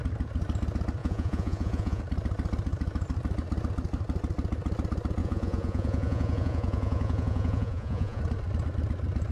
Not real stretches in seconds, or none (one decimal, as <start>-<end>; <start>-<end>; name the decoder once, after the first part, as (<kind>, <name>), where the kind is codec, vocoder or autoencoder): 1.0-2.0 (vocoder, Vocos); 5.2-8.2